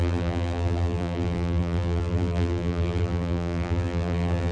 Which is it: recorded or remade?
remade